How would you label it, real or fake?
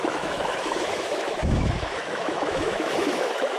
fake